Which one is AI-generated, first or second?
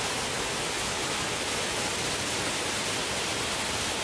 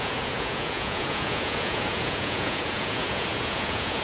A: second